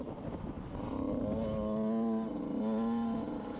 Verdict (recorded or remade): recorded